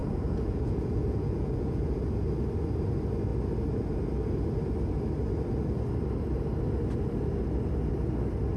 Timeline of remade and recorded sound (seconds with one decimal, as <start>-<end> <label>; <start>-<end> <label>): 0.0-1.9 remade; 1.9-8.6 recorded